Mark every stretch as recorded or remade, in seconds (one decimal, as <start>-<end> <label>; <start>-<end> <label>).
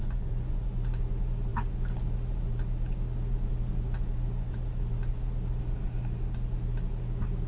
0.0-0.8 remade; 0.8-7.5 recorded